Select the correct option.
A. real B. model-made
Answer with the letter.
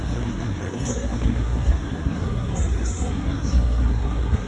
B